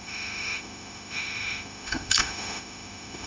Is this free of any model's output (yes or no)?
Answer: no